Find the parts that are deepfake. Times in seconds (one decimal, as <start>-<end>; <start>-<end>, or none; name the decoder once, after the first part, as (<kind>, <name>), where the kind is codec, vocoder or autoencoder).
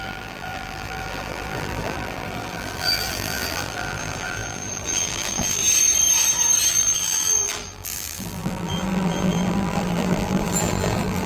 0.0-5.6 (vocoder, BigVGAN v2); 6.7-11.3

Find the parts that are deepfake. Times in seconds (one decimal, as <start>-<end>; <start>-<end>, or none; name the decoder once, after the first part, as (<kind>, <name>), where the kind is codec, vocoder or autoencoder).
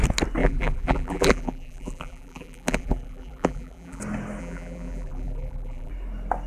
0.4-4.0 (vocoder, BigVGAN v2); 4.4-5.9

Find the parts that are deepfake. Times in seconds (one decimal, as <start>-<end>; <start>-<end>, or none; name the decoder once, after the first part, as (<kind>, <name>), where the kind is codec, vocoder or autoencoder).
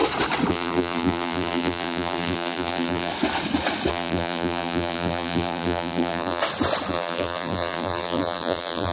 0.5-3.1 (vocoder, BigVGAN v2); 3.9-6.4; 6.9-8.9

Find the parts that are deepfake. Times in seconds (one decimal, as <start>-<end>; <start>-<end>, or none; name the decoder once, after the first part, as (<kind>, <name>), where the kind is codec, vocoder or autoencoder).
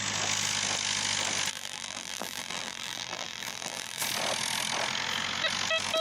1.5-4.0 (vocoder, BigVGAN v2)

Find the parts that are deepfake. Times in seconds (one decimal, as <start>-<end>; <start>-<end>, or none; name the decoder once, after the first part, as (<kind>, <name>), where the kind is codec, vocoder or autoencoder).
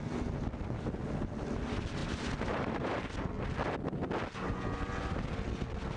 2.0-3.3 (vocoder, BigVGAN v2)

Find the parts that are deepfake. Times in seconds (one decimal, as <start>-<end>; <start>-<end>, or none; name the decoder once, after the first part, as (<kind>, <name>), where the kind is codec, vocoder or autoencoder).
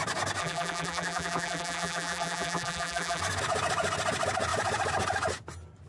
0.4-3.2 (vocoder, BigVGAN v2)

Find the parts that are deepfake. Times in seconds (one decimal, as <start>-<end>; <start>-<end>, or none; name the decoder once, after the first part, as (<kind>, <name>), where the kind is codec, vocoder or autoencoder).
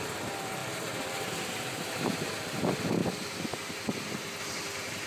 0.0-3.0 (vocoder, BigVGAN v2); 4.4-5.1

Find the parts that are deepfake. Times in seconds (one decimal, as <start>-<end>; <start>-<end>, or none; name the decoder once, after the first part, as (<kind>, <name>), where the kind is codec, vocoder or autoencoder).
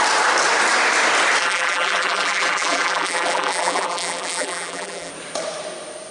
1.4-5.1 (vocoder, BigVGAN v2)